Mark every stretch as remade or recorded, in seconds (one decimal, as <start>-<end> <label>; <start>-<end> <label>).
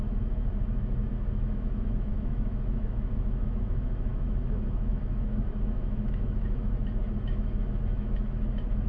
0.0-8.9 remade